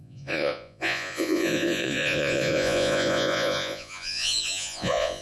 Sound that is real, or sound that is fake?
fake